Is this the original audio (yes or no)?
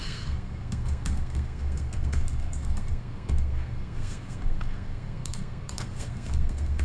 no